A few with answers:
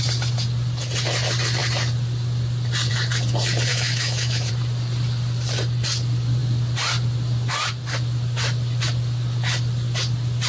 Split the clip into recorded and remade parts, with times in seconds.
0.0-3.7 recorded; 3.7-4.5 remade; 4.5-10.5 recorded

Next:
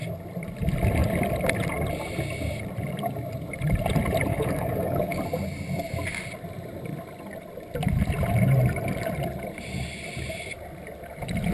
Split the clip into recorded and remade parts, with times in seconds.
0.0-4.3 recorded; 4.3-5.2 remade; 5.2-11.5 recorded